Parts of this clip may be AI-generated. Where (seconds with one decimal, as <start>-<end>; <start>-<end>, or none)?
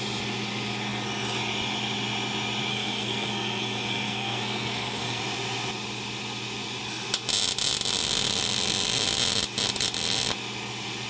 2.7-5.2